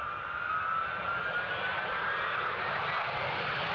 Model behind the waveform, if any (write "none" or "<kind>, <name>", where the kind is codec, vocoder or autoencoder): none